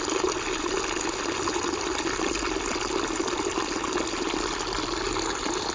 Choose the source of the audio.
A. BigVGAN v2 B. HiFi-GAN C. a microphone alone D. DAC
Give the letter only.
C